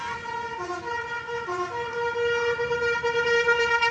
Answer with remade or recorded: recorded